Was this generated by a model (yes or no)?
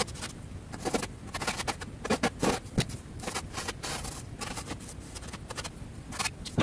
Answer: no